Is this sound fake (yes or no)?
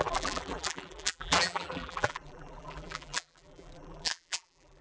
yes